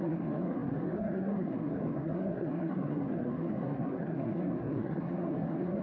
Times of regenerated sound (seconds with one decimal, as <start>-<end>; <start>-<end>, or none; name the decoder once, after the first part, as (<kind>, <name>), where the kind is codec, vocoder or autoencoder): 0.0-5.8 (codec, SNAC)